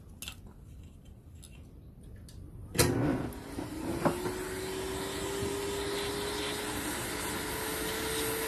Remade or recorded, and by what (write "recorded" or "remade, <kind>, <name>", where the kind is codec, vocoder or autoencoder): recorded